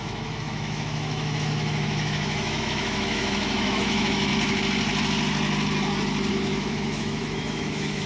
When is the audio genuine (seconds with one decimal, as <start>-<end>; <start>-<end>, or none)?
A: 4.3-6.3